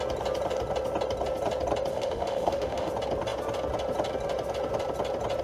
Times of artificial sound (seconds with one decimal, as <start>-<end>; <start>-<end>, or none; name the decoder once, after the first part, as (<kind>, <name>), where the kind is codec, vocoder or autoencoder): 1.9-2.9 (autoencoder, DAC-VAE)